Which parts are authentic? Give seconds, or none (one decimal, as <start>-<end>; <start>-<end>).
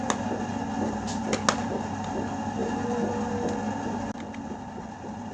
0.0-2.6; 3.3-5.3